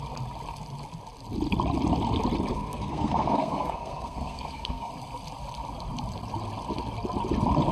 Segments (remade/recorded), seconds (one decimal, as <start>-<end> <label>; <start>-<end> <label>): 0.0-2.5 recorded; 2.5-4.9 remade; 4.9-7.7 recorded